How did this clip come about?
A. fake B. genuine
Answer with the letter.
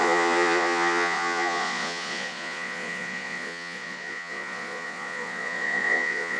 A